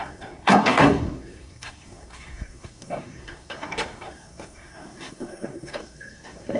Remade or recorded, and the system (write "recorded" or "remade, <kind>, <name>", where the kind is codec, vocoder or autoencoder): remade, codec, SNAC